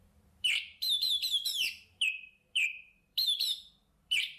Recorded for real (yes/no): no